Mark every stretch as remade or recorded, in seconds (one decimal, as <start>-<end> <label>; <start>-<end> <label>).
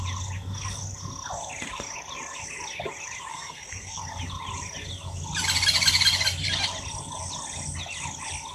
0.0-3.3 recorded; 3.3-4.0 remade; 4.0-8.5 recorded